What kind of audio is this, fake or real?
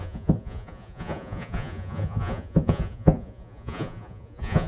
fake